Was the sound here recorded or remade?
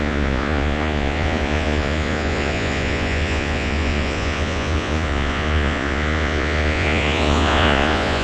remade